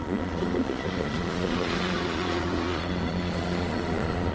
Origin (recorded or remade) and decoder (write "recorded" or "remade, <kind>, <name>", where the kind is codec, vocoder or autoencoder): remade, vocoder, Vocos